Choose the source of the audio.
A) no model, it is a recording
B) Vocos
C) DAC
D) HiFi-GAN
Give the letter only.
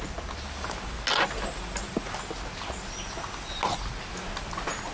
A